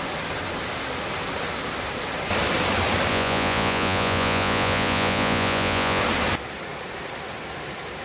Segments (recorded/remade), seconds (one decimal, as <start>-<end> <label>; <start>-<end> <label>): 0.0-3.1 recorded; 3.1-6.0 remade; 6.0-8.0 recorded

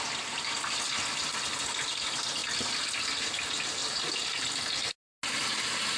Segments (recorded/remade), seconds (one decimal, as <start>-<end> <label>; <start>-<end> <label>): 0.0-6.0 recorded

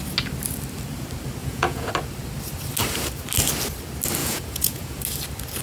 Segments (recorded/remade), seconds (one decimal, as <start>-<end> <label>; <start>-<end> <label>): 0.0-1.4 recorded; 1.4-1.9 remade; 1.9-4.2 recorded; 4.2-5.0 remade; 5.0-5.6 recorded

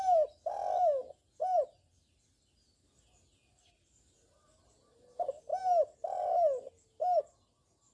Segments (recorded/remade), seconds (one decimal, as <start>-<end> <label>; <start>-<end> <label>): 0.0-7.9 recorded